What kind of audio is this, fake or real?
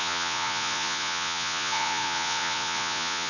fake